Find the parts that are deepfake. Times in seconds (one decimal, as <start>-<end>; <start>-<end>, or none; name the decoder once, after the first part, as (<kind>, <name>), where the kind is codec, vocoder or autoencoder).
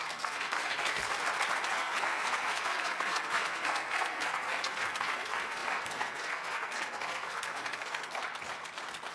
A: 0.0-1.1 (codec, SNAC); 1.7-8.2